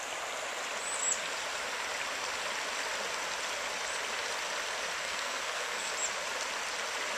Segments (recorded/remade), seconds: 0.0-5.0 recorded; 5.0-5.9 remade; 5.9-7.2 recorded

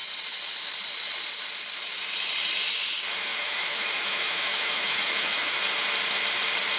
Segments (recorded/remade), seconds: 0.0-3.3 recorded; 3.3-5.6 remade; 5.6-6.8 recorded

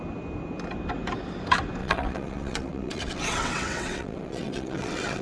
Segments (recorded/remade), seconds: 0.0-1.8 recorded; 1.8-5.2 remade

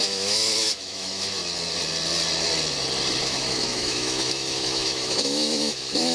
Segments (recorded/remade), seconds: 0.0-1.4 remade; 1.4-3.2 recorded; 3.2-6.1 remade

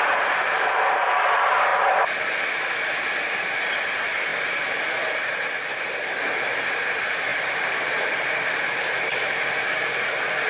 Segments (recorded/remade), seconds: 0.0-4.3 recorded; 4.3-5.5 remade; 5.5-7.3 recorded; 7.3-10.5 remade

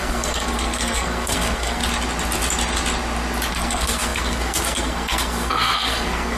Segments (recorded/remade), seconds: 0.0-1.8 remade; 1.8-3.5 recorded; 3.5-6.4 remade